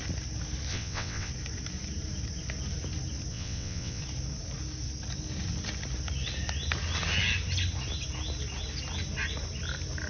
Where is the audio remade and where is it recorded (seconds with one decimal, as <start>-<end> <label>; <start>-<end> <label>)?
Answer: 0.0-0.7 recorded; 0.7-1.3 remade; 1.3-3.3 recorded; 3.3-4.0 remade; 4.0-10.1 recorded